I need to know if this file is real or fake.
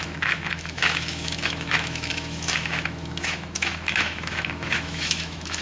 fake